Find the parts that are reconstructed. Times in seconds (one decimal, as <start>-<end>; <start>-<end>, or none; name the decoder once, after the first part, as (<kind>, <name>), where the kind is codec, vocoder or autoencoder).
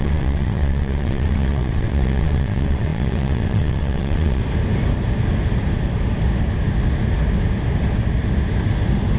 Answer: 0.0-4.4 (vocoder, WaveNeXt)